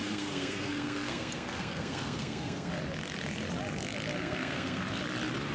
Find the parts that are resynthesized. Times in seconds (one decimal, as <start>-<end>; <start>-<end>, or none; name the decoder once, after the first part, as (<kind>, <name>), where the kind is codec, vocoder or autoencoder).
0.0-2.7 (codec, SNAC); 4.2-4.8